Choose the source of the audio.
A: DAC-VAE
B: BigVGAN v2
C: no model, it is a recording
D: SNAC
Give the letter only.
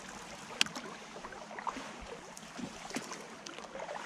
C